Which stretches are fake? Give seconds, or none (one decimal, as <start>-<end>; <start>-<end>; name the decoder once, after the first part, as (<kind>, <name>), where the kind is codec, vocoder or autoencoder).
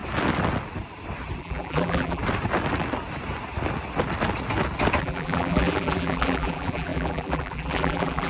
1.4-2.2 (vocoder, BigVGAN v2); 5.0-8.3